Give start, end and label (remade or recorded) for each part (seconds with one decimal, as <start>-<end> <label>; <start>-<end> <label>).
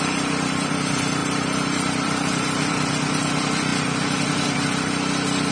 0.0-3.7 remade; 3.7-4.8 recorded; 4.8-5.5 remade